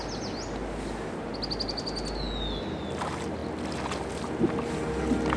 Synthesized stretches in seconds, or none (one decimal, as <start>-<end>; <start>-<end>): none